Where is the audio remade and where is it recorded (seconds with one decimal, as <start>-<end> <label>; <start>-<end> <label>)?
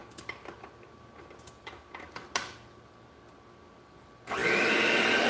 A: 0.0-5.3 recorded